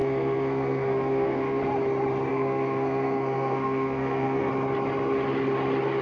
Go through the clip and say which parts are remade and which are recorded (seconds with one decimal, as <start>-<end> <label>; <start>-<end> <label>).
0.0-1.6 remade; 1.6-2.3 recorded; 2.3-4.5 remade; 4.5-6.0 recorded